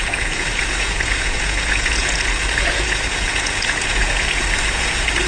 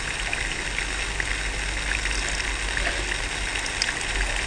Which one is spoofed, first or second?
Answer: first